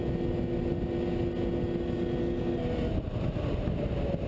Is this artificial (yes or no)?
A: no